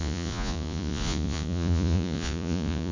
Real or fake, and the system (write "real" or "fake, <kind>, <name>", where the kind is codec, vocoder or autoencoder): fake, vocoder, Vocos